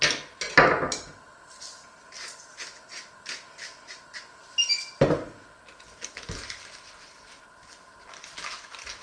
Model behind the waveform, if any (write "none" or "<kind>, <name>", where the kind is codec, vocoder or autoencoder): none